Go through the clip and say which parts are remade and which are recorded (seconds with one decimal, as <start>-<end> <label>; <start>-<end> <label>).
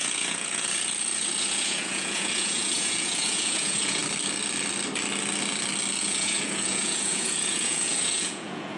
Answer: 0.0-4.0 remade; 4.0-6.0 recorded; 6.0-8.8 remade